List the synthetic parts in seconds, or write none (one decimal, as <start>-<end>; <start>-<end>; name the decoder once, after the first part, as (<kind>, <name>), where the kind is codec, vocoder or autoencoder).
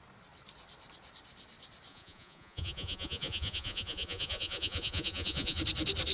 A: 1.9-5.6 (vocoder, Vocos)